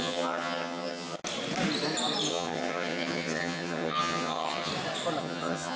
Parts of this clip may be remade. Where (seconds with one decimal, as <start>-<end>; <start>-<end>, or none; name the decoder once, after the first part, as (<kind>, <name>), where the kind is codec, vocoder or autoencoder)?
0.0-1.2 (vocoder, HiFi-GAN); 2.3-4.7; 5.2-5.8